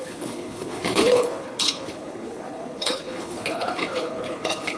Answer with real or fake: fake